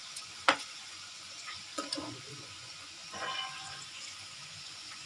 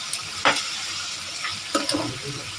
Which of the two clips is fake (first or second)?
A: first